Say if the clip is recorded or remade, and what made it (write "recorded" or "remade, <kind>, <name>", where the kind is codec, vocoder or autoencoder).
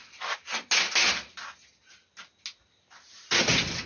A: recorded